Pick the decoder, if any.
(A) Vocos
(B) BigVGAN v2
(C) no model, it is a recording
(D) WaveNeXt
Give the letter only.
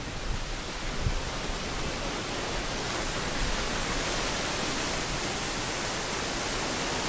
C